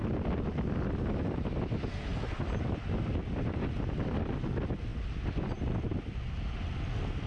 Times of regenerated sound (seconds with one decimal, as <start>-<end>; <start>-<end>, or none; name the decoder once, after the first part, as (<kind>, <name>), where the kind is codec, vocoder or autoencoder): none